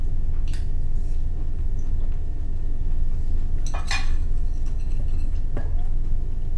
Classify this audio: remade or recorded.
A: recorded